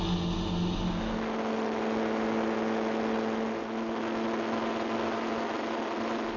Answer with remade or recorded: recorded